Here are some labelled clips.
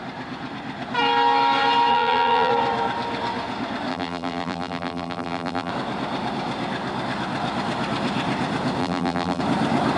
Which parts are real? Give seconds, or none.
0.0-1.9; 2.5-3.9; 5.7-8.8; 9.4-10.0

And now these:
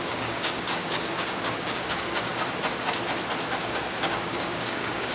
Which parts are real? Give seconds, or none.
2.3-3.6

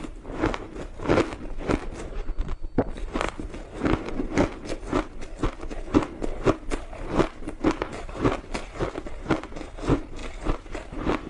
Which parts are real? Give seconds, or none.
0.0-11.3

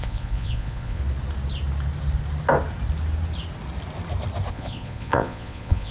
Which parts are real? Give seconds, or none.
1.0-4.5

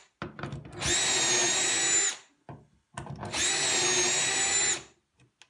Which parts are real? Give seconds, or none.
0.0-5.5